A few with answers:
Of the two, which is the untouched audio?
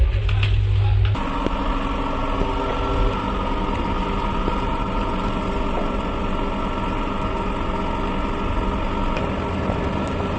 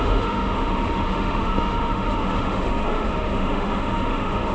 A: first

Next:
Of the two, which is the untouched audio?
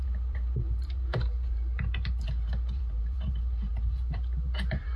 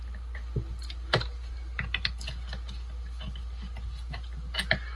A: second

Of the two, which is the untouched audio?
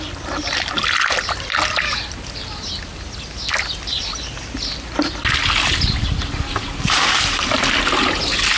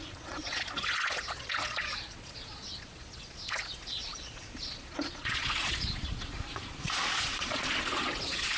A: first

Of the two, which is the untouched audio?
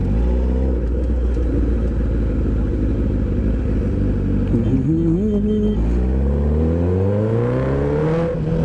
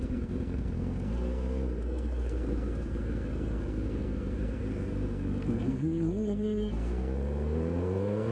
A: first